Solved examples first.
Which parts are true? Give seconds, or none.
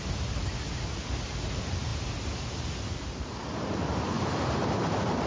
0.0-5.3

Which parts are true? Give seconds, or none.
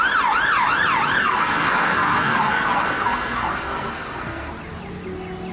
0.0-1.2; 4.5-5.5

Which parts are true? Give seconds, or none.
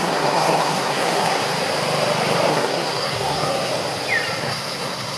1.4-2.5; 3.7-4.4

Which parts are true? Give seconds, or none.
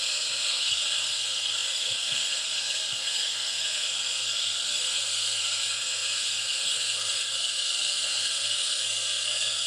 none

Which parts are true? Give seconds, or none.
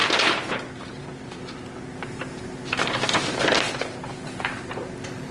0.0-5.3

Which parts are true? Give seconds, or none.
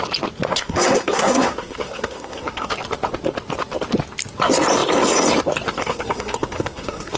0.0-0.5; 2.7-5.8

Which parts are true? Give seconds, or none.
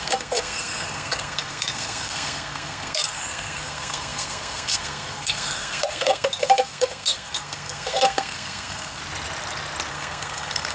9.0-9.9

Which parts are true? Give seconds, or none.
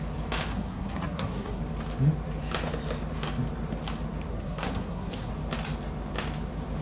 0.0-0.5; 1.6-4.3; 5.3-6.8